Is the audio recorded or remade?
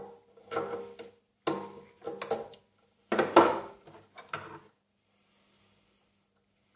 recorded